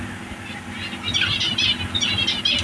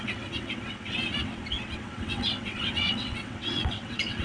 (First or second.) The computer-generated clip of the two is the second